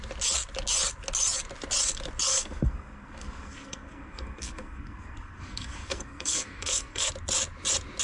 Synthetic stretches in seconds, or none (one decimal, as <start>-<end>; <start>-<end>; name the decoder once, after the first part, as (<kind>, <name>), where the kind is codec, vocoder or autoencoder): 2.3-7.1 (codec, SNAC)